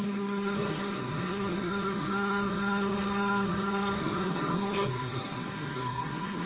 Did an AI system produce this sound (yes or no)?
yes